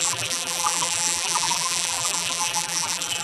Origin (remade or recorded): remade